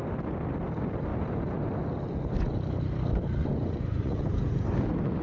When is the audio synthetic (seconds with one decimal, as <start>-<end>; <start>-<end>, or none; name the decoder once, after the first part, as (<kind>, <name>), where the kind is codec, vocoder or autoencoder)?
3.4-4.5 (vocoder, Vocos)